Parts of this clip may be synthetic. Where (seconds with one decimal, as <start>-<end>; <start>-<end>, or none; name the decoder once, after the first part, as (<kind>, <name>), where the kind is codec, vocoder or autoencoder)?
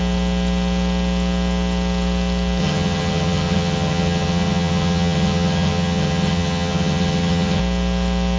2.6-7.6 (vocoder, HiFi-GAN)